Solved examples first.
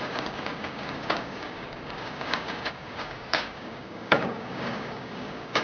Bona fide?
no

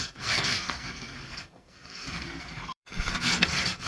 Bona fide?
no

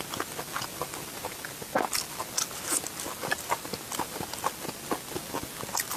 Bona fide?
yes